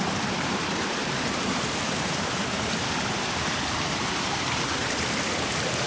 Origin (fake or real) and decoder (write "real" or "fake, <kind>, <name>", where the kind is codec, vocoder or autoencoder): fake, vocoder, BigVGAN v2